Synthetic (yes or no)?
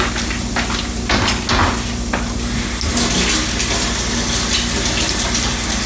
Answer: no